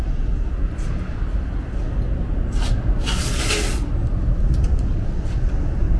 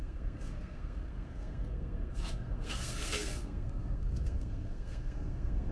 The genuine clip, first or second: first